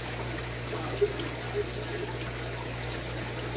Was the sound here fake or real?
real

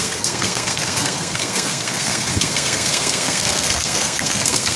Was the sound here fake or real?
fake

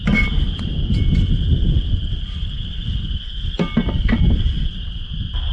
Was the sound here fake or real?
real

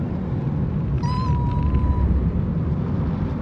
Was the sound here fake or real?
real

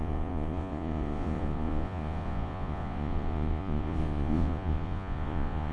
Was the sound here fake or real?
fake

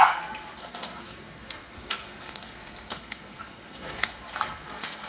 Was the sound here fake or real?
fake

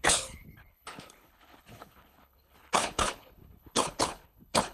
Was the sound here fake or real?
fake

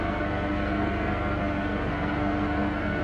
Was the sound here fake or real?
fake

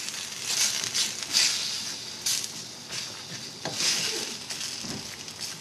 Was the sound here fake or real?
real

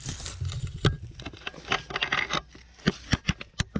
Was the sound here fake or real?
real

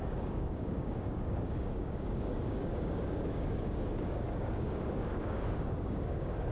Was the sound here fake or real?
fake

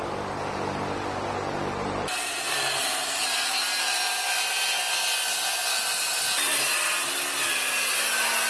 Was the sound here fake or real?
real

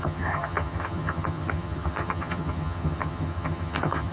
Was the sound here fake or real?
fake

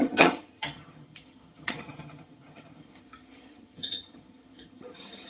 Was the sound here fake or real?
fake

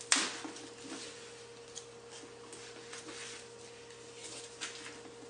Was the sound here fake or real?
real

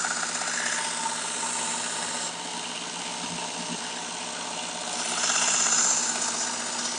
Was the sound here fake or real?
real